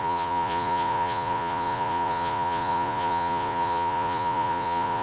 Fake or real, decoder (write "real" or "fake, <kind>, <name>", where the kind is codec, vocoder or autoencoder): fake, vocoder, Vocos